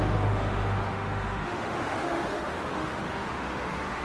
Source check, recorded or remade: remade